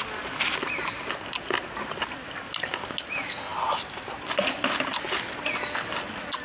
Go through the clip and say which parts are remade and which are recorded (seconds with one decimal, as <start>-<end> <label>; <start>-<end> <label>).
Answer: 0.0-6.4 recorded